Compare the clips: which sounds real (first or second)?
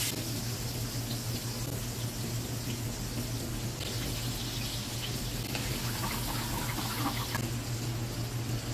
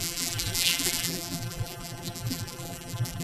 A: first